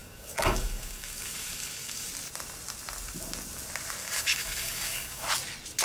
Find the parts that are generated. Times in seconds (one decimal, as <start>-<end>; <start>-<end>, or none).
0.0-2.1; 4.0-5.3